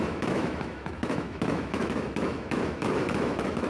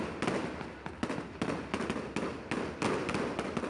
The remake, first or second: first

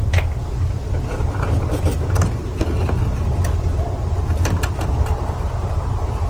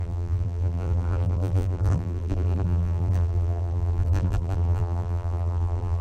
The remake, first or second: second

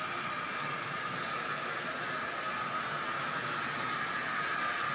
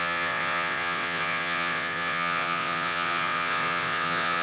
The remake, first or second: second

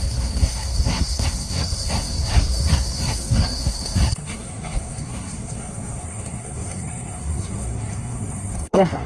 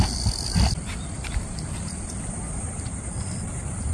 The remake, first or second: first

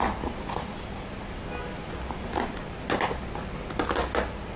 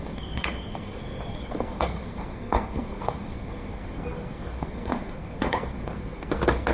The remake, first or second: second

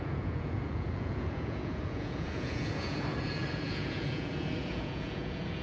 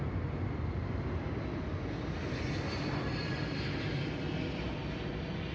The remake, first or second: first